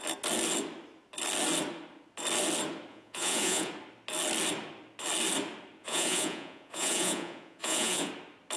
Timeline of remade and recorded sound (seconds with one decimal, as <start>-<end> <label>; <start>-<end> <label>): 0.0-2.9 recorded; 2.9-3.7 remade; 3.7-5.8 recorded; 5.8-8.1 remade; 8.1-8.6 recorded